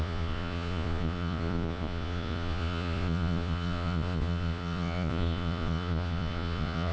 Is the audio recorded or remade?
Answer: remade